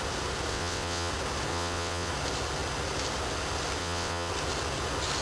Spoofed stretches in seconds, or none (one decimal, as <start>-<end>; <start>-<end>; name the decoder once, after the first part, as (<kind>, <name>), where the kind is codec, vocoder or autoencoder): 0.5-1.1 (vocoder, WaveNeXt); 1.5-2.1; 3.8-4.3